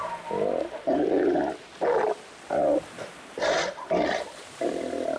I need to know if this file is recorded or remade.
recorded